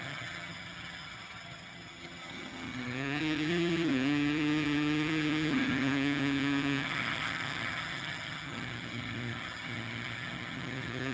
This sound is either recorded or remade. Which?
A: remade